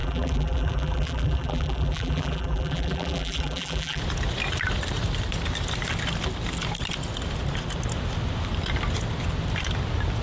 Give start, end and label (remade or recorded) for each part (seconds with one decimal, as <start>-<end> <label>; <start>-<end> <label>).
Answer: 0.0-4.0 remade; 4.0-10.2 recorded